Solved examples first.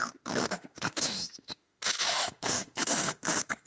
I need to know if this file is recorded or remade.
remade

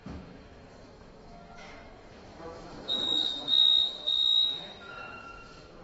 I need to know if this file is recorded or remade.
remade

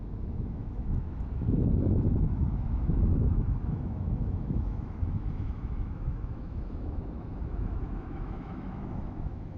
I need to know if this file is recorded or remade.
remade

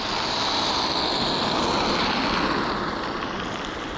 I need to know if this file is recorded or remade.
recorded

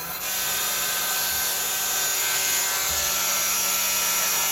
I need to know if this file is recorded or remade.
recorded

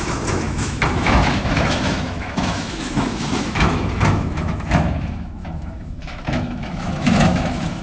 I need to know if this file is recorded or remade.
remade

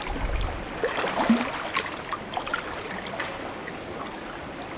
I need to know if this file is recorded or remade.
recorded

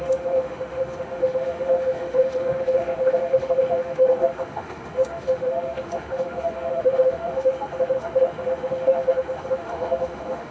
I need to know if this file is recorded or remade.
remade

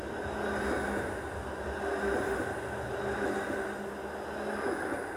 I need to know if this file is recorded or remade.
recorded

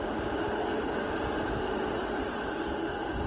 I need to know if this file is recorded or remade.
recorded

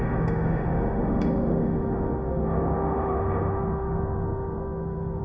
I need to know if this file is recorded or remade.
remade